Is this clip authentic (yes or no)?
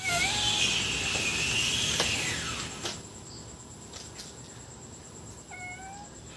yes